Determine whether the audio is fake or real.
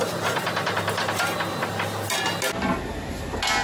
real